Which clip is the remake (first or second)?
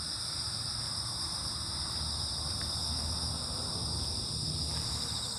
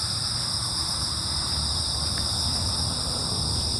second